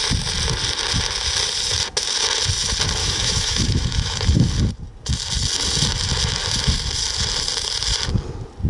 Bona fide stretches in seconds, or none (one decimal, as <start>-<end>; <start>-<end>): 0.0-3.0; 4.5-8.7